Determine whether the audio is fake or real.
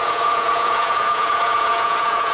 fake